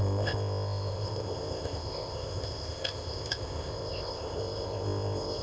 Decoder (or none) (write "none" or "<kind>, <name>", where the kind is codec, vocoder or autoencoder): codec, ZipCodec